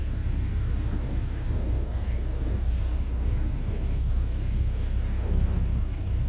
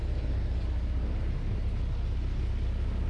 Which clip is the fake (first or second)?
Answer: first